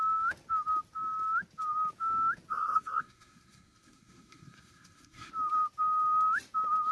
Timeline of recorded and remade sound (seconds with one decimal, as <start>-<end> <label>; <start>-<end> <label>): 0.0-2.5 recorded; 2.5-5.3 remade; 5.3-6.9 recorded